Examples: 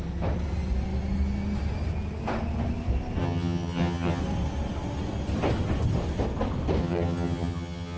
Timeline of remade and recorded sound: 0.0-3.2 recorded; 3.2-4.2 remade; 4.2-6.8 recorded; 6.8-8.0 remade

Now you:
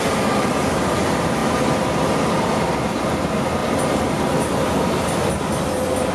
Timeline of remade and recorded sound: 0.0-6.1 recorded